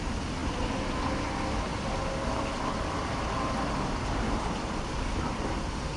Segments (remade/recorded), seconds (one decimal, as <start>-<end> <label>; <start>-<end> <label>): 0.0-6.0 recorded